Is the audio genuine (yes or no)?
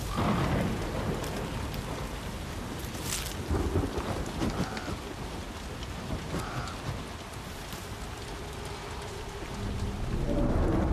yes